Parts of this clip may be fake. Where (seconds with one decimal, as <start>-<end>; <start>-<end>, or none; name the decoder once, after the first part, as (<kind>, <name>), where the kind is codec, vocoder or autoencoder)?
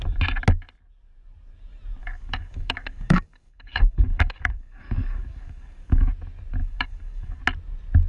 2.0-6.1 (codec, DAC); 6.6-7.4